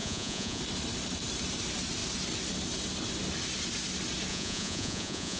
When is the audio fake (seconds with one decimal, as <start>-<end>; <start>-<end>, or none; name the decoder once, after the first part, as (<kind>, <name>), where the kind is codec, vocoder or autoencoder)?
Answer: 0.0-0.6 (vocoder, Vocos); 4.3-5.4